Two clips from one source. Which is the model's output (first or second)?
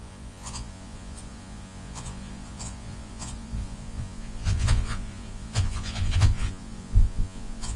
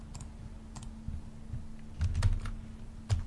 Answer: first